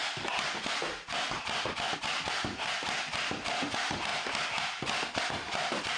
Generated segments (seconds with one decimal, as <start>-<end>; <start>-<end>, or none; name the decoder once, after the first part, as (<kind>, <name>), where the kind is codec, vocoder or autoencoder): 0.6-4.1 (vocoder, BigVGAN v2); 5.2-6.0